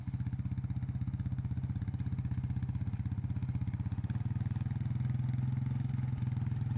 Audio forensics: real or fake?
real